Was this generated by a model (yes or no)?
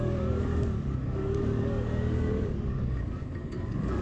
yes